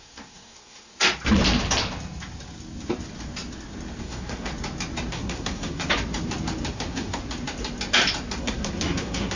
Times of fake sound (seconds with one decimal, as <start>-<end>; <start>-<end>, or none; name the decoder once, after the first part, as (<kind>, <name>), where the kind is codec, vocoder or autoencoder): 0.0-0.9 (codec, SNAC); 4.0-4.5; 5.1-5.8; 6.7-7.2; 8.4-9.4